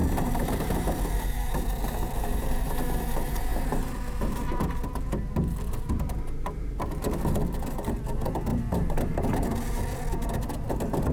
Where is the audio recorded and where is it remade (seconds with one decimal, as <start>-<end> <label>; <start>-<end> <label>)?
0.0-1.0 remade; 1.0-8.5 recorded; 8.5-9.8 remade; 9.8-11.1 recorded